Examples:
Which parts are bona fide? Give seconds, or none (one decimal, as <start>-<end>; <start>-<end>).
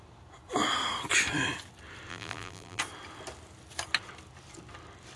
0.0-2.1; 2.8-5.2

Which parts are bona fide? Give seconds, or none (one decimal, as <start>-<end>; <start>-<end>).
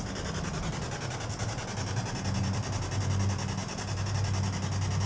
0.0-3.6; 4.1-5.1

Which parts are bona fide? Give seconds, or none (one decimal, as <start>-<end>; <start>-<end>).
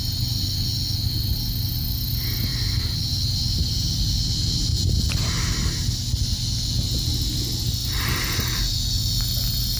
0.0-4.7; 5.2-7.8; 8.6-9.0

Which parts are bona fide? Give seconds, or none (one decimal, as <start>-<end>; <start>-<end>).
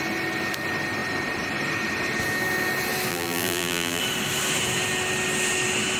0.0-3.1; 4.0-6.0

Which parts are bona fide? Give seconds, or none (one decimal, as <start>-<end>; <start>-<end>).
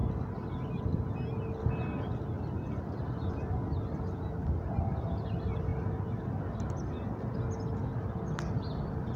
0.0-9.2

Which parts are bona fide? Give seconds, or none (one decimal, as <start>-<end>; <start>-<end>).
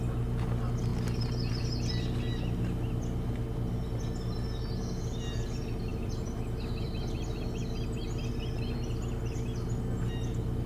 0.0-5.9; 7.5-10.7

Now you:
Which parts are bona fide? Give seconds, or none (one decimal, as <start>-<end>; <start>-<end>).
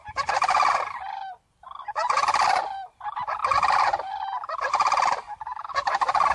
2.0-3.0; 3.4-5.7